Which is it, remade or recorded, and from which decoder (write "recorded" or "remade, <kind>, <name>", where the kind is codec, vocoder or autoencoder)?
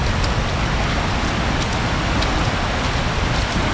recorded